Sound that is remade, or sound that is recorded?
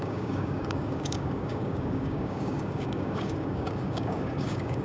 remade